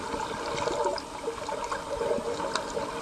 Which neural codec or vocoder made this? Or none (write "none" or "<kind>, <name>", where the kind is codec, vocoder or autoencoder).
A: none